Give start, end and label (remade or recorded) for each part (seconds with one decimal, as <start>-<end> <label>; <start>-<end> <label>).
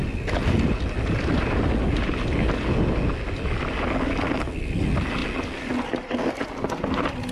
0.0-7.3 recorded